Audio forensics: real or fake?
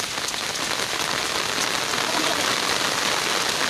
real